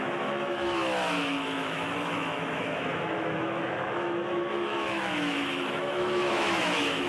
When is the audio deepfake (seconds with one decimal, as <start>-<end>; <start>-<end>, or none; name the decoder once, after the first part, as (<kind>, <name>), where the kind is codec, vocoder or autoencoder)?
0.0-7.1 (autoencoder, DAC-VAE)

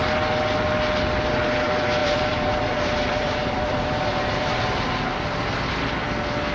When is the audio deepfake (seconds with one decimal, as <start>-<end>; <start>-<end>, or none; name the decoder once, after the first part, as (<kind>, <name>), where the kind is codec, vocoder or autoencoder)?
2.0-4.6 (vocoder, BigVGAN v2)

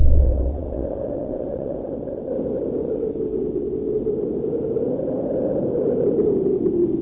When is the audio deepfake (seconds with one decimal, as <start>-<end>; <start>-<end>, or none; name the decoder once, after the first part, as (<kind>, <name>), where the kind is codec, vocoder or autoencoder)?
0.0-2.3 (vocoder, WaveNeXt); 2.8-4.1

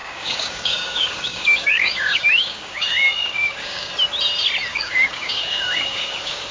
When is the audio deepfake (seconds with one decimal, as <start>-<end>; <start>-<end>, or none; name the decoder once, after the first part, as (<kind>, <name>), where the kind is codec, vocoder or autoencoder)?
0.0-3.9 (codec, DAC); 4.7-6.5

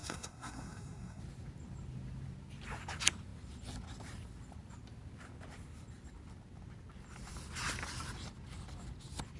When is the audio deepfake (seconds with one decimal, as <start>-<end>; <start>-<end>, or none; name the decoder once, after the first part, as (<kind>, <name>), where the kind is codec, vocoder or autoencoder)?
0.0-1.2 (codec, SNAC)

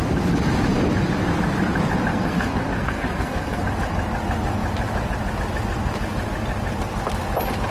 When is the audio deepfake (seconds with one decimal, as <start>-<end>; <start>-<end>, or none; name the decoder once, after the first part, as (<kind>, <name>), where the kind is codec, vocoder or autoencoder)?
2.1-3.6 (codec, SNAC)